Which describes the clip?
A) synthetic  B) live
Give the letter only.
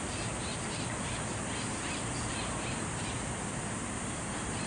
B